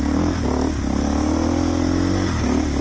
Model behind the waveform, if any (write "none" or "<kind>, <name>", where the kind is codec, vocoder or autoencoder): none